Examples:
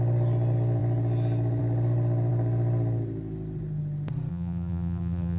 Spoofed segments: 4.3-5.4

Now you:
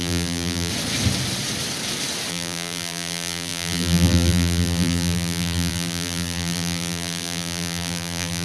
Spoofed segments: 0.0-0.7; 2.3-8.4

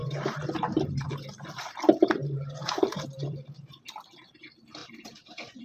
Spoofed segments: 0.0-1.1; 2.2-3.4; 4.8-5.6

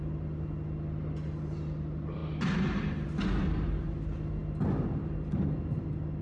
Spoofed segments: none

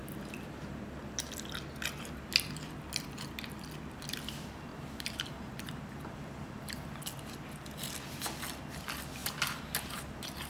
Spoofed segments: 0.0-0.8; 4.7-7.0; 9.2-10.5

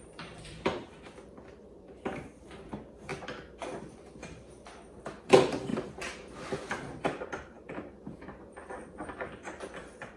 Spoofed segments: 0.0-3.1; 3.8-10.2

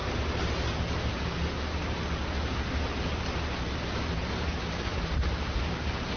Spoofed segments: 3.7-6.2